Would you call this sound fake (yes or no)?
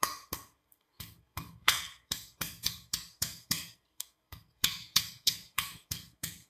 yes